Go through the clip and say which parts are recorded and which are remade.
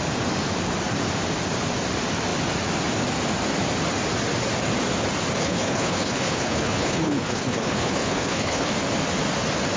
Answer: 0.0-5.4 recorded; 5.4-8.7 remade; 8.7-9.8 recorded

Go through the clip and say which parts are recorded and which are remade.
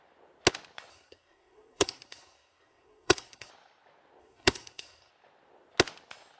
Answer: 0.0-0.9 recorded; 0.9-3.5 remade; 3.5-4.2 recorded; 4.2-5.1 remade; 5.1-6.4 recorded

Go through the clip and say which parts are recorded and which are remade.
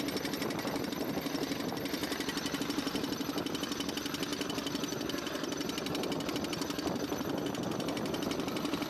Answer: 0.0-8.9 recorded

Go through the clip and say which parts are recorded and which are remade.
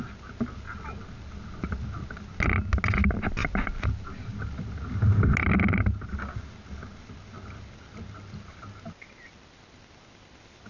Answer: 0.0-10.7 recorded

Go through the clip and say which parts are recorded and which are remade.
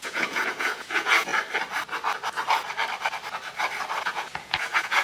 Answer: 0.0-1.3 remade; 1.3-4.0 recorded; 4.0-5.0 remade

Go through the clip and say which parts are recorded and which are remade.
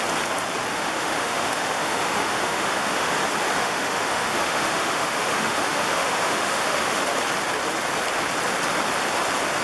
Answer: 0.0-0.7 recorded; 0.7-3.1 remade; 3.1-3.6 recorded; 3.6-7.0 remade; 7.0-9.6 recorded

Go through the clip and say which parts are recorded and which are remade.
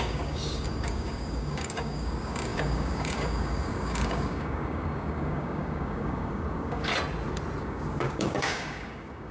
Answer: 0.0-6.9 remade; 6.9-7.6 recorded; 7.6-9.3 remade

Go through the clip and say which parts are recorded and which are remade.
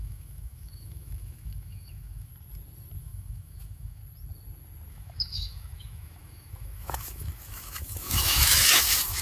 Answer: 0.0-2.3 remade; 2.3-3.0 recorded; 3.0-4.0 remade; 4.0-4.9 recorded; 4.9-9.2 remade